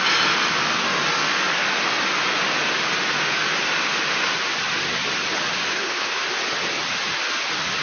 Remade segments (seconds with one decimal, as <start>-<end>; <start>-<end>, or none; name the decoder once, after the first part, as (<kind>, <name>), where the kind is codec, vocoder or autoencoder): 5.7-6.2 (codec, HILCodec)